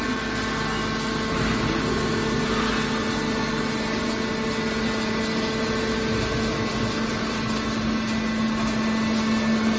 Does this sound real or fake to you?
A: real